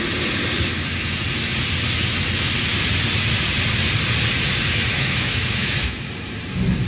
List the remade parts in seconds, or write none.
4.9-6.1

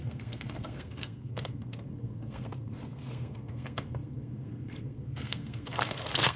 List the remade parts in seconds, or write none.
0.0-6.4

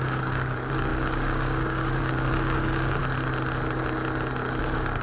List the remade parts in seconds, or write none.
0.0-3.0; 4.6-5.0

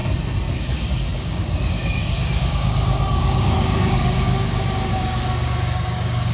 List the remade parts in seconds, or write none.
0.5-6.3

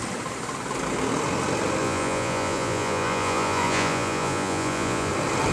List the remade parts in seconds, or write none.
1.8-5.1

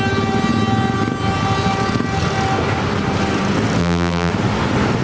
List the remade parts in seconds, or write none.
3.8-4.3